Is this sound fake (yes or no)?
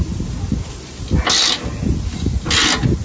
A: no